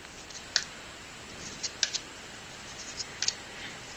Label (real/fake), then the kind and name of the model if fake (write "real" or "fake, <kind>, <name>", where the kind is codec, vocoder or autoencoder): real